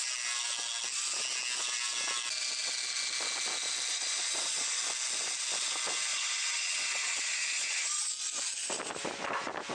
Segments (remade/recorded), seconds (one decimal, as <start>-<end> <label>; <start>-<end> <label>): 0.0-3.9 recorded; 3.9-4.8 remade; 4.8-6.1 recorded; 6.1-8.1 remade; 8.1-9.7 recorded